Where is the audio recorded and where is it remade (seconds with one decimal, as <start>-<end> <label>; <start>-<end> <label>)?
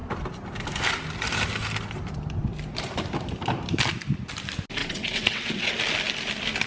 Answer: 0.0-4.8 recorded; 4.8-5.7 remade; 5.7-6.7 recorded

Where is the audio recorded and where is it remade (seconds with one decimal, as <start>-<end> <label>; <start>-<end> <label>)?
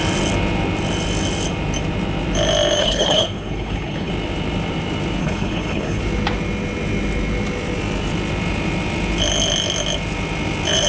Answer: 0.0-2.8 recorded; 2.8-4.1 remade; 4.1-5.2 recorded; 5.2-6.0 remade; 6.0-10.9 recorded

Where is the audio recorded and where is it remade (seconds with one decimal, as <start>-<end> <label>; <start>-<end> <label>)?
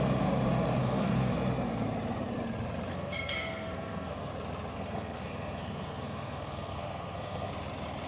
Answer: 0.0-0.8 recorded; 0.8-1.3 remade; 1.3-2.9 recorded; 2.9-4.3 remade; 4.3-4.7 recorded; 4.7-7.5 remade; 7.5-8.1 recorded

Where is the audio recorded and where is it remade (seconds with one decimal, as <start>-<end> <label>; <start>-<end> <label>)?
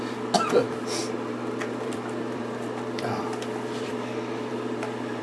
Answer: 0.0-1.0 recorded; 1.0-4.1 remade; 4.1-4.5 recorded; 4.5-5.2 remade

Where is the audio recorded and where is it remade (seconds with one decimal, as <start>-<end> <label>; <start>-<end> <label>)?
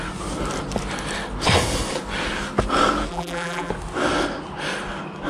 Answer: 0.0-3.1 recorded; 3.1-3.7 remade; 3.7-5.3 recorded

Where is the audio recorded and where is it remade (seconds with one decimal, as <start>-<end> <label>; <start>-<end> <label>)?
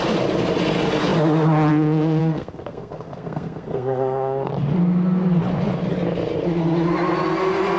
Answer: 0.0-2.2 recorded; 2.2-4.5 remade; 4.5-7.8 recorded